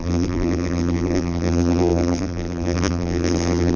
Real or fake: fake